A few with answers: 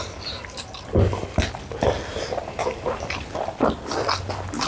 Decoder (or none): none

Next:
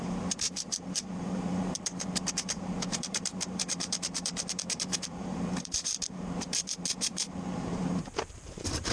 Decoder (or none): vocoder, BigVGAN v2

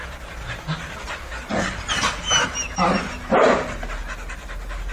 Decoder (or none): none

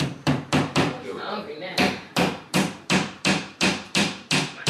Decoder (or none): vocoder, BigVGAN v2